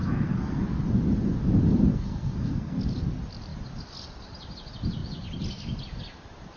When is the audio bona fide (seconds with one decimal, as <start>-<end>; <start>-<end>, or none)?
0.6-1.9; 2.8-6.6